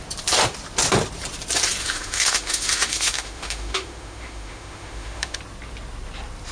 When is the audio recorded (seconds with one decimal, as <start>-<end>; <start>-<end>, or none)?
0.0-1.8; 5.4-6.5